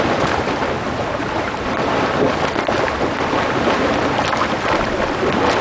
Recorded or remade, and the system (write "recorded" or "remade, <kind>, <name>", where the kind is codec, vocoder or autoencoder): recorded